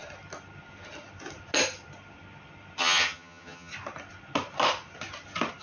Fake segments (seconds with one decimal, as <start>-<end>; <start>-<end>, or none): 2.8-3.7